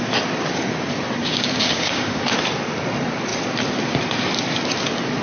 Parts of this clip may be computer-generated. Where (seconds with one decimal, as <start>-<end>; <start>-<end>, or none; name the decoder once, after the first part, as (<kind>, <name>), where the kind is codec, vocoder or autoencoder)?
1.2-2.2 (codec, DAC)